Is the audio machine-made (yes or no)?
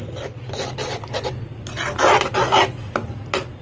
no